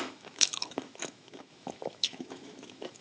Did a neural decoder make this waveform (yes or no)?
yes